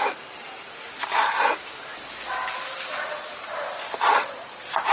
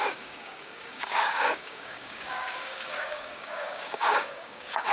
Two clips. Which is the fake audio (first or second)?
second